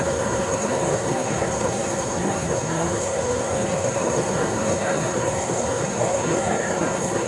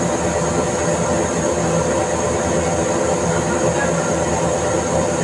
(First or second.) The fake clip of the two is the first